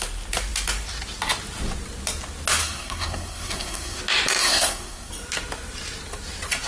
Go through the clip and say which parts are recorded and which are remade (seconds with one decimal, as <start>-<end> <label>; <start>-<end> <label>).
0.0-2.6 recorded; 2.6-4.0 remade; 4.0-4.4 recorded; 4.4-5.1 remade; 5.1-6.7 recorded